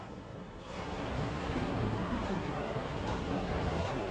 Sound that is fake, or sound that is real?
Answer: fake